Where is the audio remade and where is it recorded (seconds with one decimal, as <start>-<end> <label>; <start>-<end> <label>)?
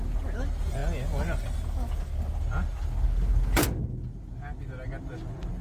0.0-5.6 recorded